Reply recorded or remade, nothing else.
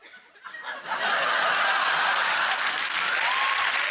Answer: recorded